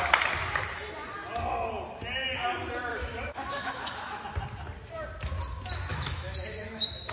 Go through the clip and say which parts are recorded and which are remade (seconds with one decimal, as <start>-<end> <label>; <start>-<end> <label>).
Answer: 0.0-2.9 recorded; 2.9-4.2 remade; 4.2-5.9 recorded; 5.9-7.1 remade